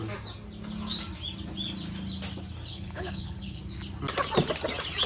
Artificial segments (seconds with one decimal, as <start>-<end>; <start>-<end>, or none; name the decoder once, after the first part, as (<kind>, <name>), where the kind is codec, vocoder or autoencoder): 2.7-3.6 (codec, HILCodec)